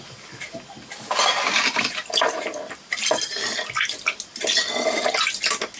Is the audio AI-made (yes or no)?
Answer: no